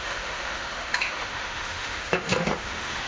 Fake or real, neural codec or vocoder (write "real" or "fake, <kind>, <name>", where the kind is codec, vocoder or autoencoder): fake, autoencoder, DAC-VAE